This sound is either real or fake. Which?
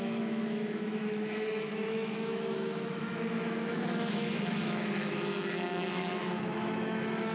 fake